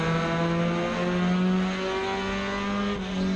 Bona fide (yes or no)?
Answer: yes